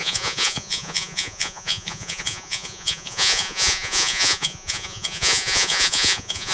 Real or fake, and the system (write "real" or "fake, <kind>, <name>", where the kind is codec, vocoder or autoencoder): fake, vocoder, Vocos